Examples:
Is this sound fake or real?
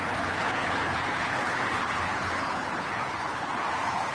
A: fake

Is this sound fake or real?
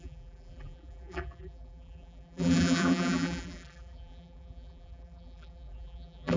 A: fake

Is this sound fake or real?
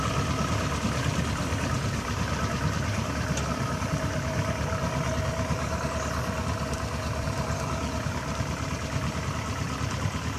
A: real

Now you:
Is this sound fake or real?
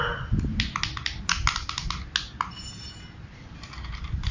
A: real